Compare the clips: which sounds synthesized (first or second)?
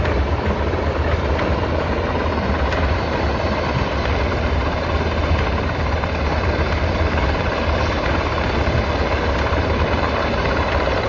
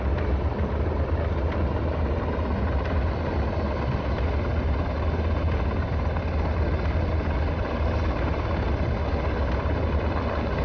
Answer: first